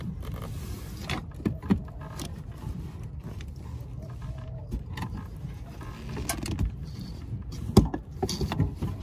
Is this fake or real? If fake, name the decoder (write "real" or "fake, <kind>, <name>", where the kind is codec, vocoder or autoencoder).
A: real